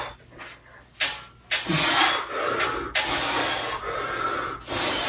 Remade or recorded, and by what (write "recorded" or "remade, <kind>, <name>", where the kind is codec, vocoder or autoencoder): recorded